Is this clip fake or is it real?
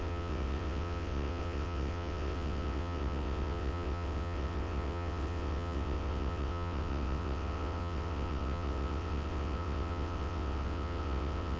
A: fake